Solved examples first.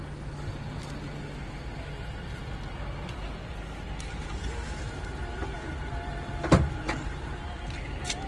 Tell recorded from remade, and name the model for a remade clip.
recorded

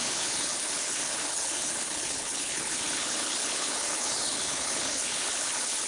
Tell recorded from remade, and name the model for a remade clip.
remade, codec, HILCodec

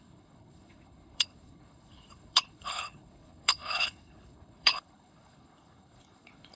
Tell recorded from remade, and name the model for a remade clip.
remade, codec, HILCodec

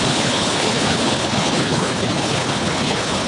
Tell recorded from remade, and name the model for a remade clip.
remade, codec, HILCodec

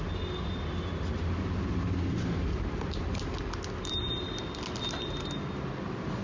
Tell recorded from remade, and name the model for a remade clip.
recorded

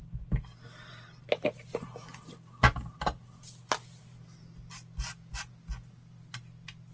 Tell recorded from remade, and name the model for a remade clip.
recorded